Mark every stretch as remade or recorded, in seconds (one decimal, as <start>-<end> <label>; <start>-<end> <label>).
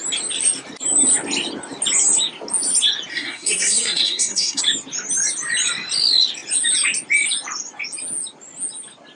0.0-3.1 recorded; 3.1-4.6 remade; 4.6-9.2 recorded